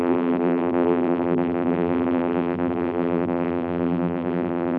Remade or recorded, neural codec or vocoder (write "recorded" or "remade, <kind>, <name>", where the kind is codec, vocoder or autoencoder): remade, vocoder, BigVGAN v2